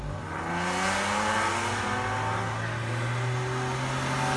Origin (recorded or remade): recorded